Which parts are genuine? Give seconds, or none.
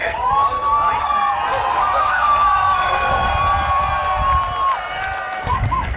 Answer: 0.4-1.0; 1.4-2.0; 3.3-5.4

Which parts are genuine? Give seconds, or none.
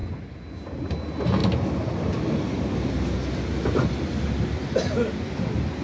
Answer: 0.0-5.8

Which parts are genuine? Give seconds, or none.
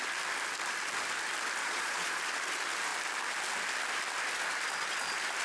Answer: 0.0-1.6; 2.2-5.4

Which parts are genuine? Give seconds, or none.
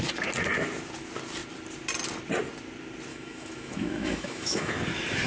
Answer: 0.0-3.1; 4.7-5.3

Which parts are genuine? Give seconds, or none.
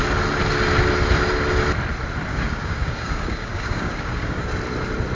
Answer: 0.0-2.3; 4.5-5.1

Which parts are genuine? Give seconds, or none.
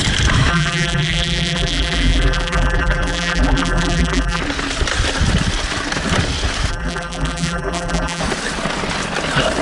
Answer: 0.0-0.5; 4.4-6.7; 8.2-9.6